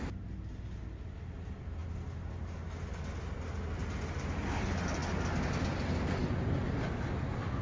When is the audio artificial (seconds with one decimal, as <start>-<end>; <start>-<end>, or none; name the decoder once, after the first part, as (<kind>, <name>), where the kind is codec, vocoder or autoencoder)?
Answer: 3.8-4.5 (vocoder, BigVGAN v2)